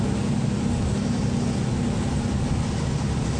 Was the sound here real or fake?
real